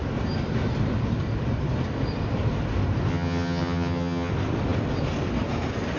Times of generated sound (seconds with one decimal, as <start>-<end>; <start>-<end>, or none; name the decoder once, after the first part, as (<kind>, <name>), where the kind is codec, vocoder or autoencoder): 3.1-4.3 (vocoder, HiFi-GAN)

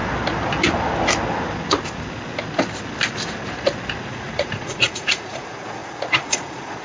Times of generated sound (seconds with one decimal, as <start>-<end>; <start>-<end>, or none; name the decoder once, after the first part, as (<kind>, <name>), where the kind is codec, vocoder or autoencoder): 4.1-6.8 (vocoder, Vocos)

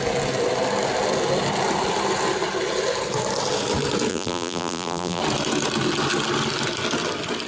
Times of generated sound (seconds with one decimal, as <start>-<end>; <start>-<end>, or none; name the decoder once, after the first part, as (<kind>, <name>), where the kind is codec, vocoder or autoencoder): 4.1-5.2 (vocoder, BigVGAN v2)

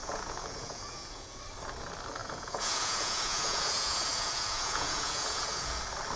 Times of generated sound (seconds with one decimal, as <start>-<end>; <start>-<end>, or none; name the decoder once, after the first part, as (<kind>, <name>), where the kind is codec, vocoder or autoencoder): 0.0-1.4 (vocoder, Vocos); 2.2-5.8